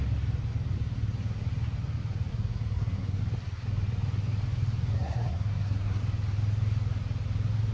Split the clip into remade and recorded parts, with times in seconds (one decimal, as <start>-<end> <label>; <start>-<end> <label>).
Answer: 0.0-2.3 recorded; 2.3-3.2 remade; 3.2-4.9 recorded; 4.9-6.0 remade; 6.0-7.7 recorded